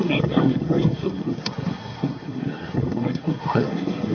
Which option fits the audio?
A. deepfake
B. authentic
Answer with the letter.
A